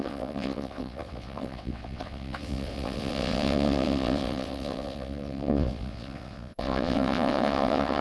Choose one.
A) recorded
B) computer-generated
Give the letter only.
B